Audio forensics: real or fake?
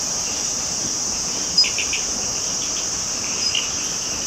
fake